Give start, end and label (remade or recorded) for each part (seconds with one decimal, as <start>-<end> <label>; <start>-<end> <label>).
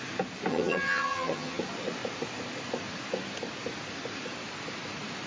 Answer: 0.0-0.5 recorded; 0.5-1.6 remade; 1.6-5.3 recorded